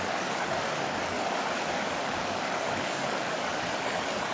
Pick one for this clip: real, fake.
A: fake